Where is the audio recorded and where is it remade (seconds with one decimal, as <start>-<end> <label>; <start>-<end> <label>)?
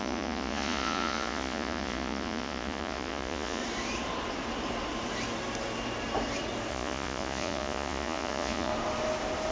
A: 0.0-3.6 remade; 3.6-6.7 recorded; 6.7-8.7 remade; 8.7-9.5 recorded